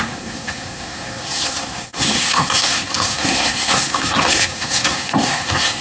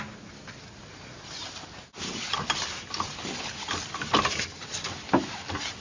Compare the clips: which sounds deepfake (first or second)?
first